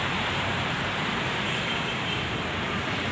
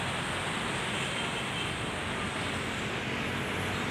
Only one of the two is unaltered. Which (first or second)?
second